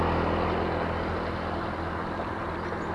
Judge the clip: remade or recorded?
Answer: recorded